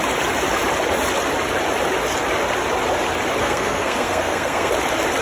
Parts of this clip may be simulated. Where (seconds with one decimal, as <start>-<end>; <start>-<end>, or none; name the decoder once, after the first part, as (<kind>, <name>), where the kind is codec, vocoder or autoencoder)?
3.4-4.7 (codec, SNAC)